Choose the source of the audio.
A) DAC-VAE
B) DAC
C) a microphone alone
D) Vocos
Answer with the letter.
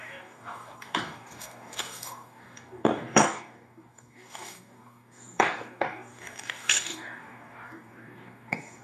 B